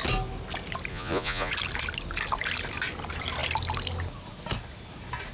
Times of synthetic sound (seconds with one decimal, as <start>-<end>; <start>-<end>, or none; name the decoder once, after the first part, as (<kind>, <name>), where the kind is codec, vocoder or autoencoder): 0.9-1.5 (vocoder, Vocos)